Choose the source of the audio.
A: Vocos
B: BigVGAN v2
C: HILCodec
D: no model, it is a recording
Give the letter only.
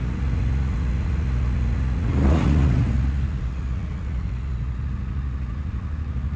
A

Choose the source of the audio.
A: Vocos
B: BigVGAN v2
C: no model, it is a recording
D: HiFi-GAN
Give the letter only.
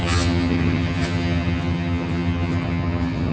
D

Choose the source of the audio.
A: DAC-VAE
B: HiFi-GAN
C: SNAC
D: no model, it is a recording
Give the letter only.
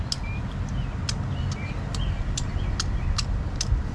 D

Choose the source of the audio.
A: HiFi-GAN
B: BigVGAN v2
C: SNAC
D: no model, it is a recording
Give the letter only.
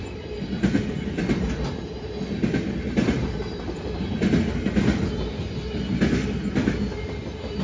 D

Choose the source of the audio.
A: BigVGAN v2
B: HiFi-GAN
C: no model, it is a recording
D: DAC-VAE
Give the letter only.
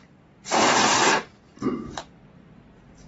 A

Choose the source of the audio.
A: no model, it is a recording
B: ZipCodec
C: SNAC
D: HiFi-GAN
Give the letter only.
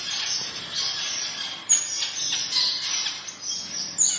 A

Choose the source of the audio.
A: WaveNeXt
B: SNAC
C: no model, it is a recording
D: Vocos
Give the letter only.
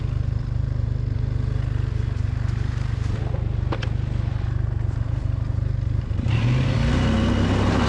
C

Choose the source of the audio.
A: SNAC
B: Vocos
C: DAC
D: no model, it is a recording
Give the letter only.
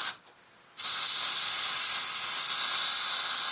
D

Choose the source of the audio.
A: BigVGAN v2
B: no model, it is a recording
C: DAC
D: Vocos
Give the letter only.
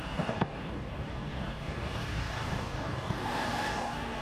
C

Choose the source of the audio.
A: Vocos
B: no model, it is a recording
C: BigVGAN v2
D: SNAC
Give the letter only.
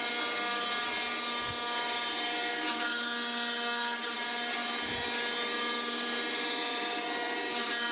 B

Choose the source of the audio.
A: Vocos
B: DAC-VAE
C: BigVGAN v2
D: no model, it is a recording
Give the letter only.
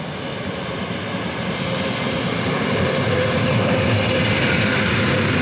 D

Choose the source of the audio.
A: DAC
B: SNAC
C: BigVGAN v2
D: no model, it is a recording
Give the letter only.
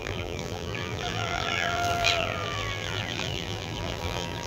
C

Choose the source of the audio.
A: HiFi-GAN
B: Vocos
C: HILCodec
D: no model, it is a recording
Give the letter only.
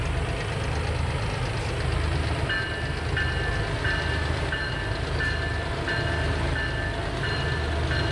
D